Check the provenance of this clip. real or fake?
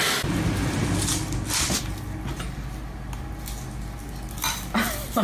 real